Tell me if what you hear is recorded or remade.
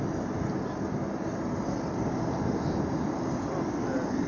recorded